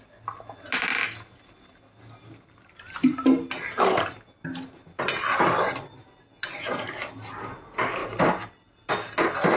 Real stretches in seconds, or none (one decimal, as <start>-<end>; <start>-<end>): 0.0-9.6